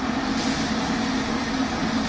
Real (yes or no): yes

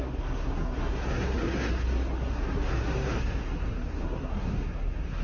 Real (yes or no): no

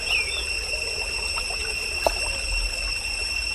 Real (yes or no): yes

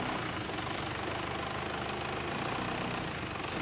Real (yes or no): yes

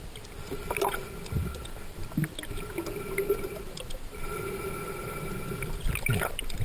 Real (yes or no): yes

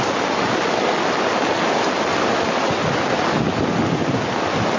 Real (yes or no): yes